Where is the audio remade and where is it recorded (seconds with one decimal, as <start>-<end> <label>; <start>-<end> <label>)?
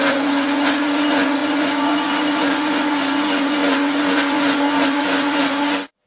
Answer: 0.0-6.1 remade